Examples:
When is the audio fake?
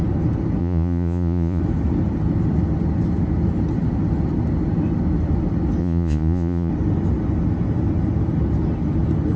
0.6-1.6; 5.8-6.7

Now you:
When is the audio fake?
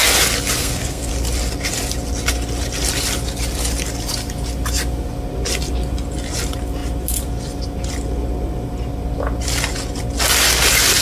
0.6-1.1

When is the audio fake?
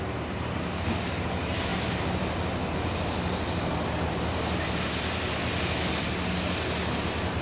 none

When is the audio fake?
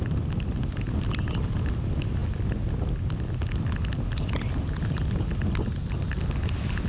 none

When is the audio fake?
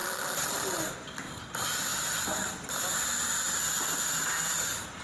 none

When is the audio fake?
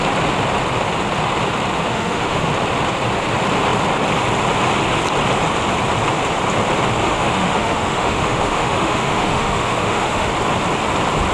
1.9-2.5; 7.0-10.3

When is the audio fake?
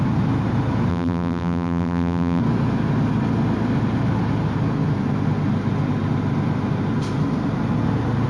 0.9-2.4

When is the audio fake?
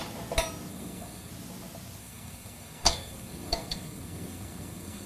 0.7-1.3; 2.0-5.1